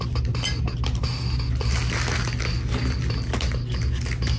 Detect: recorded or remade recorded